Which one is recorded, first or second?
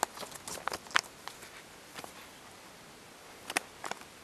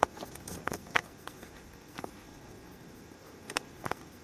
first